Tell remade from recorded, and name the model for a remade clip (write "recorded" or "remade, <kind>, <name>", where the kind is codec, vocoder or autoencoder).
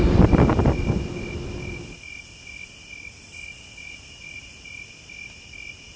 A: recorded